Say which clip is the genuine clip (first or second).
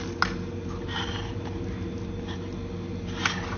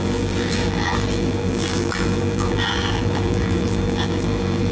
first